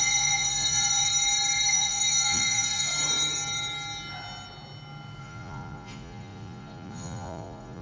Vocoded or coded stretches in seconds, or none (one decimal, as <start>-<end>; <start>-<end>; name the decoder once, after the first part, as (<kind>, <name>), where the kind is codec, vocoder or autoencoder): 0.0-1.1 (vocoder, Vocos); 1.7-2.9; 5.2-7.8